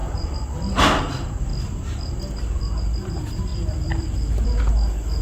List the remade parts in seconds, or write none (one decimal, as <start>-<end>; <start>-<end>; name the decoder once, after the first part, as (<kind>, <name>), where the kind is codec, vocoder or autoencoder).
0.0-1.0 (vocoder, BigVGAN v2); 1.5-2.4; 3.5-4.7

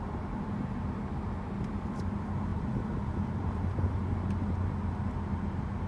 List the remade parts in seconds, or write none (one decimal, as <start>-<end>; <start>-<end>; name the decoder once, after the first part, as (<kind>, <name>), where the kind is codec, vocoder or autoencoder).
2.5-4.0 (vocoder, BigVGAN v2)

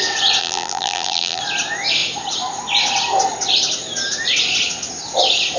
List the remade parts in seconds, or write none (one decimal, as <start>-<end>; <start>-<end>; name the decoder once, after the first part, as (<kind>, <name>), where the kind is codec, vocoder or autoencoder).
0.4-1.4 (vocoder, BigVGAN v2)

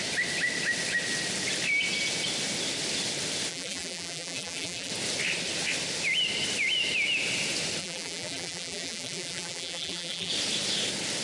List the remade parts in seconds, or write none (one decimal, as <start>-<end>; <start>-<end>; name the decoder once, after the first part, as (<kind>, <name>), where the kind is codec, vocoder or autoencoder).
3.5-4.9 (vocoder, BigVGAN v2); 7.8-10.3

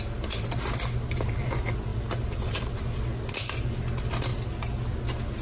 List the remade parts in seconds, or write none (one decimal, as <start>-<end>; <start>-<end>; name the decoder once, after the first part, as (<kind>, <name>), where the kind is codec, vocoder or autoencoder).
1.9-2.8 (vocoder, BigVGAN v2)

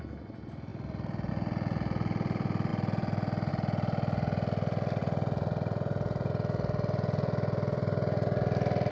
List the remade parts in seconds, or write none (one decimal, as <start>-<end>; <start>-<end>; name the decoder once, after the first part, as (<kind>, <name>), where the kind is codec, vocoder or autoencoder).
2.7-3.5 (vocoder, BigVGAN v2); 5.0-6.3

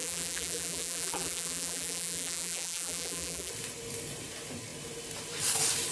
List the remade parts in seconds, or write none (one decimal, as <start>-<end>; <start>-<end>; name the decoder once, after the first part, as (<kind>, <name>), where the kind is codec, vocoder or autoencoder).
0.0-3.5 (vocoder, BigVGAN v2)

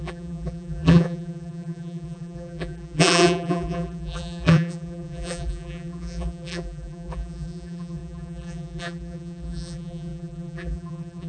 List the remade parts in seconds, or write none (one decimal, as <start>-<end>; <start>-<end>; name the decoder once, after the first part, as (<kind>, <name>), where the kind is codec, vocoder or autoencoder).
0.0-11.3 (vocoder, BigVGAN v2)